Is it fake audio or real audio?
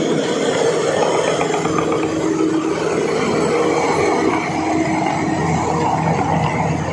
real